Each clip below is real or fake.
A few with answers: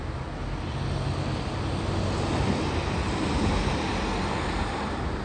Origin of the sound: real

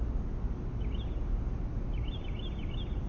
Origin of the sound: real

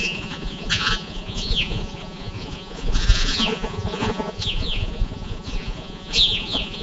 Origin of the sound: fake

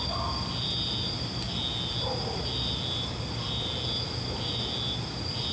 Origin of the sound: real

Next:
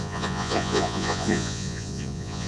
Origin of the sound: fake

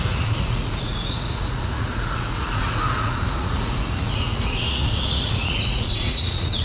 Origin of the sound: fake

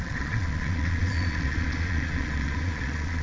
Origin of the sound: fake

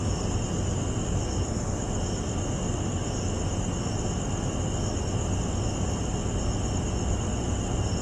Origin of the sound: real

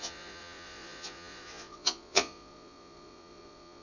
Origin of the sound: fake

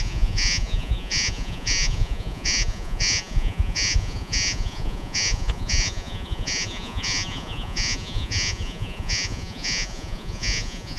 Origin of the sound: fake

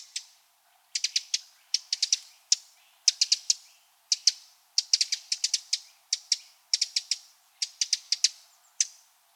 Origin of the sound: real